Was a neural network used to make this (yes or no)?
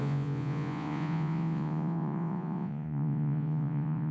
yes